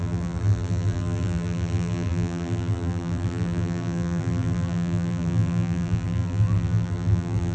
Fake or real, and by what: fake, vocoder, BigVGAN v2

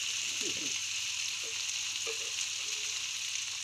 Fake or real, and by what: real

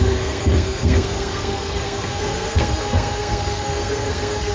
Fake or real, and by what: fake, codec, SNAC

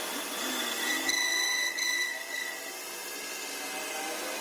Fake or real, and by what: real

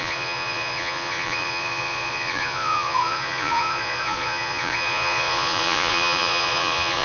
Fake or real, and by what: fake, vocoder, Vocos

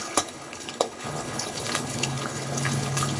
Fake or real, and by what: fake, codec, HILCodec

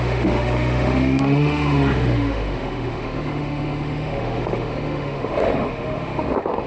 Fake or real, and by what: fake, autoencoder, DAC-VAE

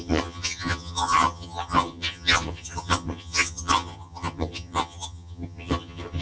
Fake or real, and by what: fake, vocoder, HiFi-GAN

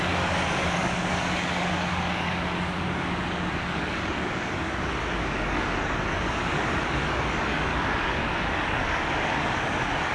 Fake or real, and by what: fake, codec, DAC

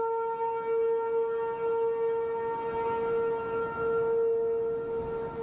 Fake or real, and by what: real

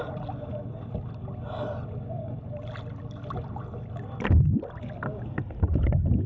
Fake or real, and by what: real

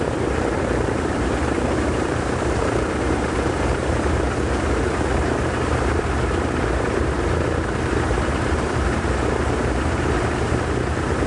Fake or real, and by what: fake, vocoder, BigVGAN v2